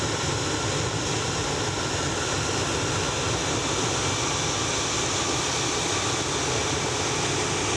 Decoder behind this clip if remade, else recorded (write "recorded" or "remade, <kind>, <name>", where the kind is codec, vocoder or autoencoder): recorded